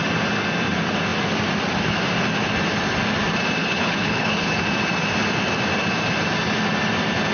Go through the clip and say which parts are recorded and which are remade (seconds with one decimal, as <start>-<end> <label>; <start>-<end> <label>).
0.0-3.6 recorded; 3.6-4.6 remade; 4.6-7.3 recorded